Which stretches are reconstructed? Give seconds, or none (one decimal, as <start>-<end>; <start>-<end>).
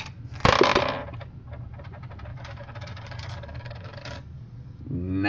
2.3-4.8